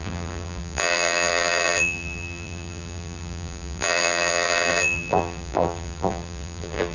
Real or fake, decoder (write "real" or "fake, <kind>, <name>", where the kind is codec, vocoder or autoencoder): fake, vocoder, BigVGAN v2